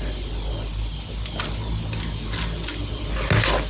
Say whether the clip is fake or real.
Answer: real